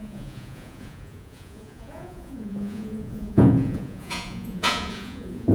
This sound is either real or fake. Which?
fake